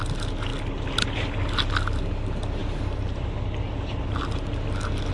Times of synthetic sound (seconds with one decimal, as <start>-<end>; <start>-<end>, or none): none